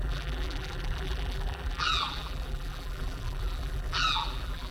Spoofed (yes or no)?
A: yes